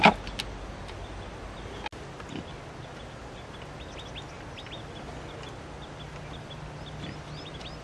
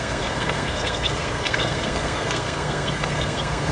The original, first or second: first